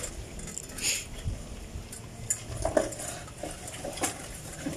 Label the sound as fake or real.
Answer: real